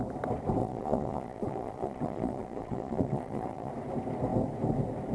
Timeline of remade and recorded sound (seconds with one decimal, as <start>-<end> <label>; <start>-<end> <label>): 0.0-0.6 recorded; 0.6-3.7 remade; 3.7-5.1 recorded

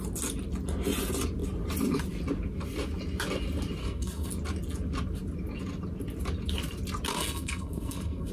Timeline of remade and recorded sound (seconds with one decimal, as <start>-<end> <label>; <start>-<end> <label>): 0.0-3.8 recorded; 3.8-4.3 remade; 4.3-7.1 recorded; 7.1-8.3 remade

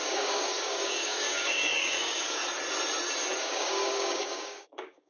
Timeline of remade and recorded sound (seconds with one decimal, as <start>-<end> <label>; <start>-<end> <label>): 0.0-2.4 remade; 2.4-3.4 recorded; 3.4-5.1 remade

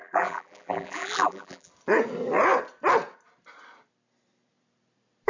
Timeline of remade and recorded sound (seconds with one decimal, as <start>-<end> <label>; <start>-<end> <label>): 0.0-1.7 remade; 1.7-5.3 recorded